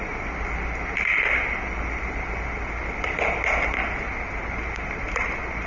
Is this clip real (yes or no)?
yes